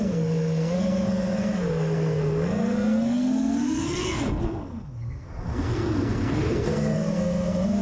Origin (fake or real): fake